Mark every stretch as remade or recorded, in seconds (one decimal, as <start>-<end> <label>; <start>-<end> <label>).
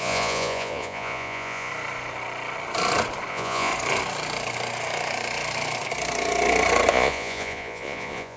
0.0-1.7 remade; 1.7-3.3 recorded; 3.3-3.7 remade; 3.7-6.9 recorded; 6.9-8.4 remade